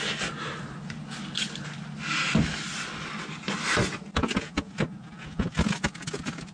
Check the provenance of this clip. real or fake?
real